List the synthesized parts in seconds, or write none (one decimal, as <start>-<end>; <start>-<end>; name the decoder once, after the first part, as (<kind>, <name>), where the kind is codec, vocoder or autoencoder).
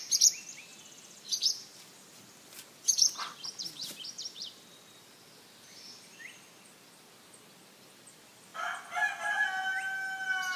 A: none